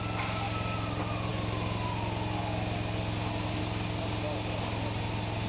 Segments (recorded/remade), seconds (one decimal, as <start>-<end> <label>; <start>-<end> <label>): 0.0-5.5 recorded